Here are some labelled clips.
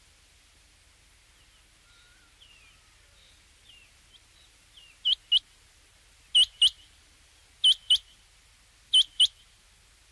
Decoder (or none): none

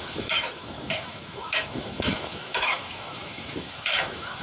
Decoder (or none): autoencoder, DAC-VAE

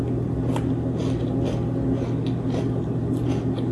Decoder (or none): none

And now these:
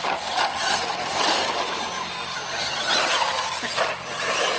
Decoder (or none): none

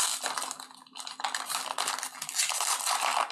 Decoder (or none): none